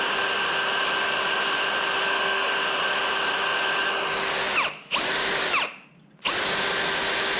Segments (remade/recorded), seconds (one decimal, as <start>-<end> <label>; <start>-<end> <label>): 0.0-2.0 recorded; 2.0-2.5 remade; 2.5-7.4 recorded